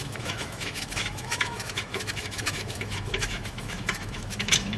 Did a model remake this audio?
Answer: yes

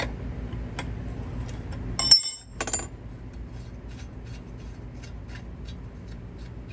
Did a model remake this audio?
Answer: no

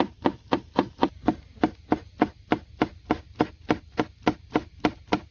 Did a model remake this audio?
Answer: no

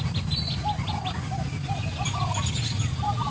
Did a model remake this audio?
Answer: no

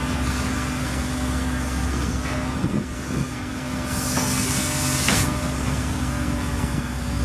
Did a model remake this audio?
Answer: yes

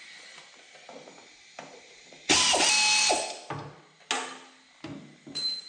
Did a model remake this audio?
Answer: no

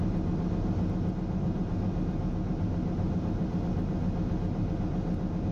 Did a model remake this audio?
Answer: no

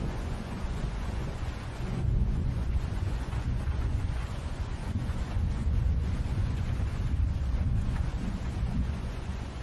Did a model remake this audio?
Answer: yes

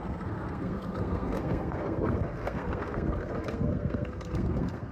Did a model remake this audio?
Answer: yes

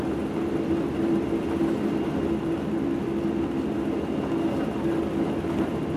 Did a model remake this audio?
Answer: no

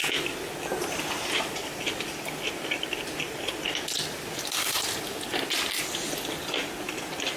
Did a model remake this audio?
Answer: no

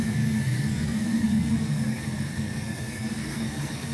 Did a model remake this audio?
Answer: yes